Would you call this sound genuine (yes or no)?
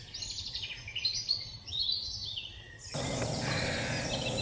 yes